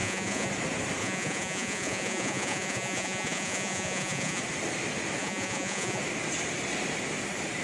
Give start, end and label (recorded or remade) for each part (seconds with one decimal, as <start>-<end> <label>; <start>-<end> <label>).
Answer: 0.0-0.5 remade; 0.5-1.0 recorded; 1.0-4.4 remade; 4.4-5.2 recorded; 5.2-6.0 remade; 6.0-7.6 recorded